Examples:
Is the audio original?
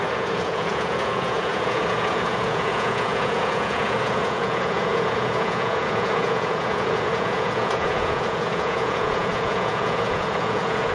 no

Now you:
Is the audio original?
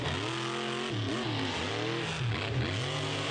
yes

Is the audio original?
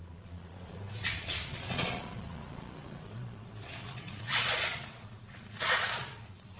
no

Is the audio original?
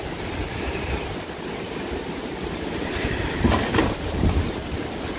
yes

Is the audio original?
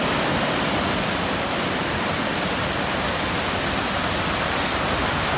yes